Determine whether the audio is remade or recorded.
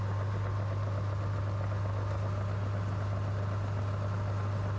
recorded